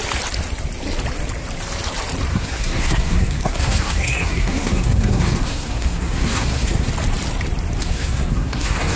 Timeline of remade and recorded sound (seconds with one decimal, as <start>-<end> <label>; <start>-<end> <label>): 0.0-2.3 recorded; 2.3-6.9 remade; 6.9-7.8 recorded; 7.8-9.0 remade